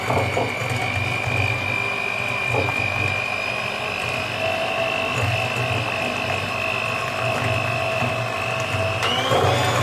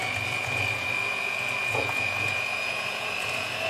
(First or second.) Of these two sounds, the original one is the first